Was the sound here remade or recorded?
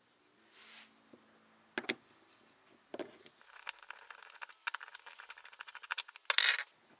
recorded